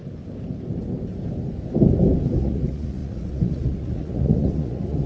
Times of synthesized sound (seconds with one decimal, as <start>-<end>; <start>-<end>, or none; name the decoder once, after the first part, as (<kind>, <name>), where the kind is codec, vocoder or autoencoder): 2.4-5.1 (vocoder, Vocos)

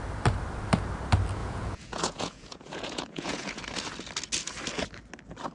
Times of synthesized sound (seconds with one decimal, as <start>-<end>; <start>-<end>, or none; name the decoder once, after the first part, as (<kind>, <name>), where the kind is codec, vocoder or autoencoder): 1.4-3.6 (vocoder, Vocos)

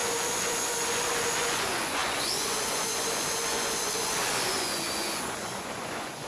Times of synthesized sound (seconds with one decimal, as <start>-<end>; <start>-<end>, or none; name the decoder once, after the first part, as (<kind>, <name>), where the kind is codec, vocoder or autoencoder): 0.0-6.3 (vocoder, Vocos)